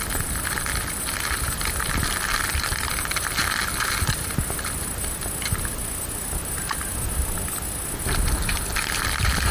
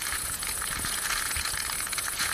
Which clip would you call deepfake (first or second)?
second